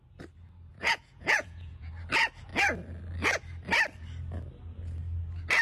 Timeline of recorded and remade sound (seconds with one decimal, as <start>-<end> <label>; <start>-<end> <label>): 0.0-0.7 recorded; 0.7-1.9 remade; 1.9-5.6 recorded